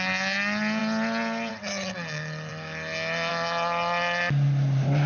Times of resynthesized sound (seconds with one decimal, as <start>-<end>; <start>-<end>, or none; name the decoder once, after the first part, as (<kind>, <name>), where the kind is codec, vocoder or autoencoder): none